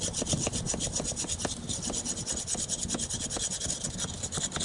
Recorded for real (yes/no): yes